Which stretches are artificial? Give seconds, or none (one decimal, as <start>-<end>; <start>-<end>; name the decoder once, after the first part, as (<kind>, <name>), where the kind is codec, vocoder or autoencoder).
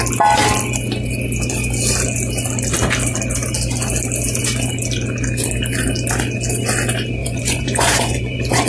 7.2-8.7 (vocoder, Vocos)